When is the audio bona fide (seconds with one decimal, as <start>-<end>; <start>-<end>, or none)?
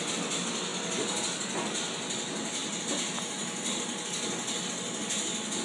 0.0-5.6